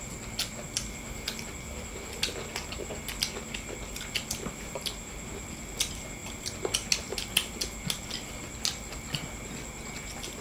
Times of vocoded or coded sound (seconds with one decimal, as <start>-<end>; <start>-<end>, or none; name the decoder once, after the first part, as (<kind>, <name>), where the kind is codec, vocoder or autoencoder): none